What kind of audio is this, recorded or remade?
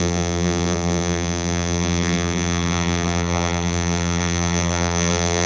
remade